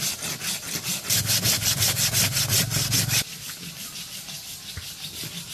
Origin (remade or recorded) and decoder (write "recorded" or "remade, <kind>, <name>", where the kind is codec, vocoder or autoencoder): recorded